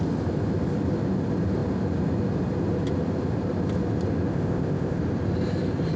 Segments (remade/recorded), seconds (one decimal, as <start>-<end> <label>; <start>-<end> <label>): 0.0-4.3 recorded; 4.3-5.0 remade; 5.0-6.0 recorded